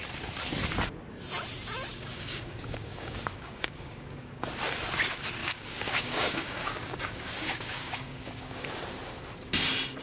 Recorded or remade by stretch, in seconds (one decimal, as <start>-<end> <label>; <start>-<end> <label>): 0.0-1.9 recorded; 1.9-4.4 remade; 4.4-5.4 recorded; 5.4-8.8 remade; 8.8-10.0 recorded